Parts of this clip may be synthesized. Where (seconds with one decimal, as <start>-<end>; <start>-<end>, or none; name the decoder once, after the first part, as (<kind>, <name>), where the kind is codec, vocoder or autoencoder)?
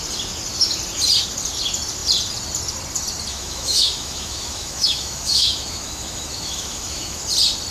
3.3-7.2 (autoencoder, DAC-VAE)